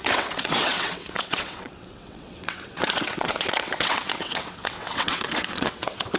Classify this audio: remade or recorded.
remade